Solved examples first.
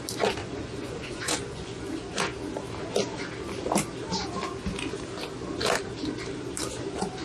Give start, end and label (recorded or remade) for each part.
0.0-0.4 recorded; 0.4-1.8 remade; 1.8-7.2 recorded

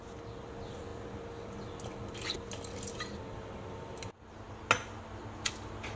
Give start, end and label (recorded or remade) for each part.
0.0-6.0 recorded

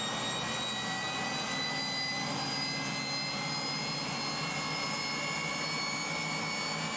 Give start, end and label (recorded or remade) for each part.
0.0-7.0 recorded

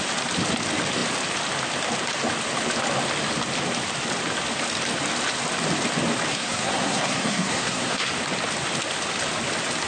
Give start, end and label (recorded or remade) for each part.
0.0-6.3 recorded; 6.3-8.1 remade; 8.1-9.9 recorded

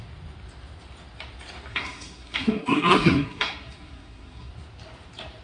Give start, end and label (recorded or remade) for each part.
0.0-1.7 recorded; 1.7-4.5 remade; 4.5-5.4 recorded